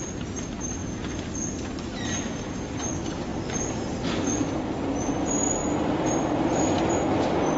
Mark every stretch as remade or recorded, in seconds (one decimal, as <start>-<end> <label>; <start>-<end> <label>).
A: 0.0-3.3 recorded; 3.3-4.4 remade; 4.4-5.6 recorded; 5.6-6.9 remade; 6.9-7.6 recorded